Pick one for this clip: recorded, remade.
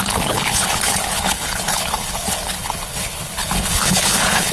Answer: remade